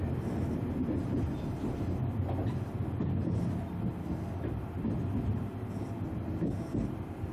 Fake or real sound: real